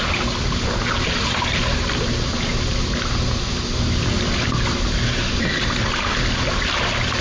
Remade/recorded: recorded